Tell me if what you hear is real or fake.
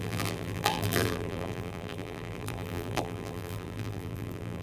fake